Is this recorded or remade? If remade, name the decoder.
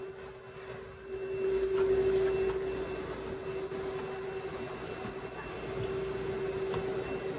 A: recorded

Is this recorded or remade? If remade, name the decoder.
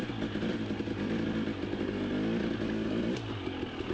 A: recorded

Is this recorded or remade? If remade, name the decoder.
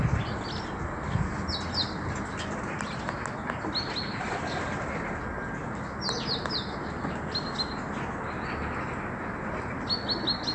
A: recorded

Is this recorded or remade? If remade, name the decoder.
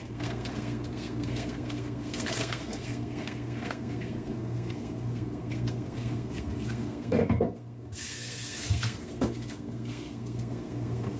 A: remade, codec, SNAC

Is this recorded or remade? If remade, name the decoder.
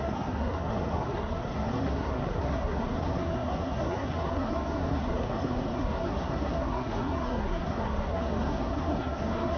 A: remade, codec, SNAC